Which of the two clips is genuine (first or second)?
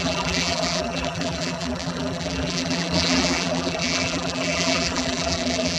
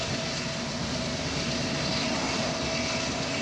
second